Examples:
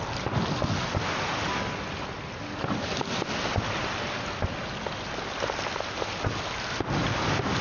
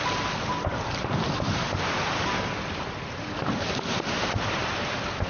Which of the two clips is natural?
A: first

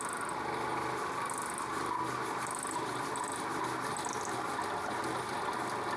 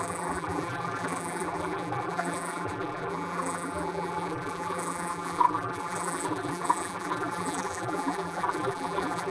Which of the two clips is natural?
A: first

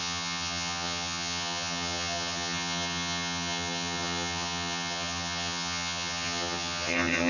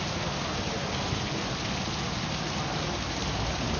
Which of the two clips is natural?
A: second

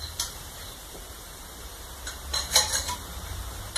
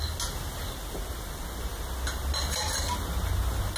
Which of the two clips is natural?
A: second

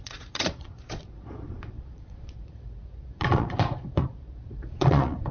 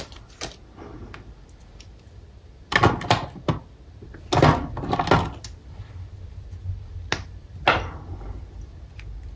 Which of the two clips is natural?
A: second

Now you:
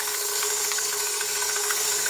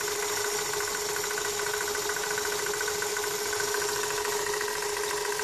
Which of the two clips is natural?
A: second